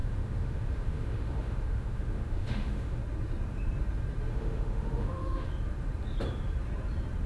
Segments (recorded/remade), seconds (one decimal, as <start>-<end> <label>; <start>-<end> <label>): 0.0-3.0 remade; 3.0-4.3 recorded; 4.3-5.5 remade; 5.5-7.3 recorded